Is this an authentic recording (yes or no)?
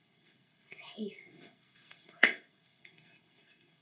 no